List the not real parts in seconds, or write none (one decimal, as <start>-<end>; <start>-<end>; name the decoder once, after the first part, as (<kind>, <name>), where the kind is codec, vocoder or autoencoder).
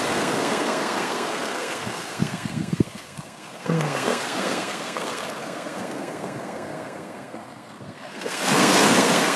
0.0-9.4 (codec, SNAC)